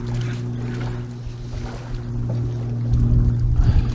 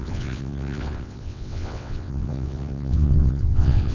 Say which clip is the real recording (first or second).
first